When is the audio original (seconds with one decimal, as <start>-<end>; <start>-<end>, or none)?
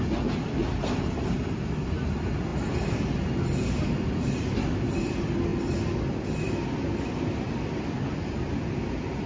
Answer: 0.0-9.3